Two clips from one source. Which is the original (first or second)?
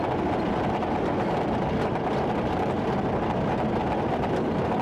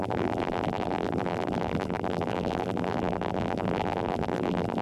first